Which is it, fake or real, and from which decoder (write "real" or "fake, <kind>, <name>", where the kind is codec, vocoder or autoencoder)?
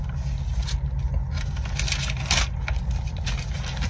real